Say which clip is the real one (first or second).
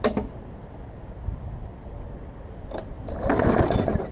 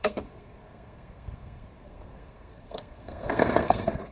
first